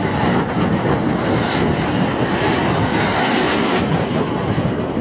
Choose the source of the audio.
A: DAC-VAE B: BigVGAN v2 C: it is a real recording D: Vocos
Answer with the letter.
B